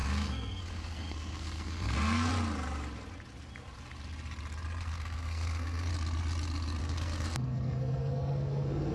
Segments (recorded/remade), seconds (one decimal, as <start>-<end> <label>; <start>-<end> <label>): 0.0-2.3 remade; 2.3-4.8 recorded; 4.8-5.9 remade; 5.9-6.8 recorded; 6.8-8.9 remade